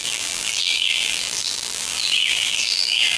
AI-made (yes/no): yes